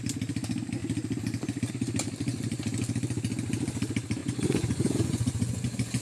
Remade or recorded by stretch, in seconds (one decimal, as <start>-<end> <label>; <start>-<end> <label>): 0.0-4.2 recorded; 4.2-6.0 remade